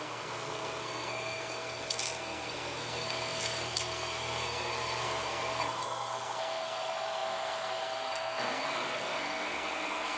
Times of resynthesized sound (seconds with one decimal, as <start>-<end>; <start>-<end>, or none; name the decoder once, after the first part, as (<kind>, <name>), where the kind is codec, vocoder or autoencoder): 0.0-10.2 (codec, SNAC)